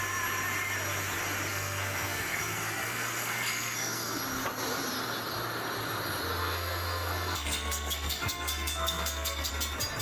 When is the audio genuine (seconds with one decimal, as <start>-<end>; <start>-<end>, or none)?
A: 0.0-1.5; 4.2-6.4; 9.5-10.0